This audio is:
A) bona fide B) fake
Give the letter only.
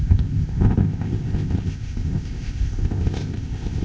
B